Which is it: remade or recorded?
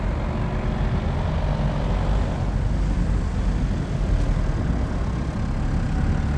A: recorded